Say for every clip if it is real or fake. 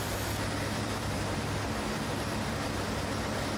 fake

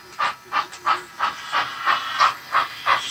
real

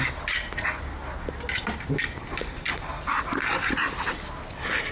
real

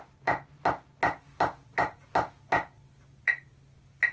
real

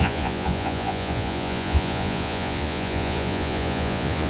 fake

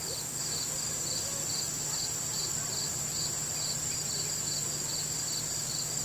real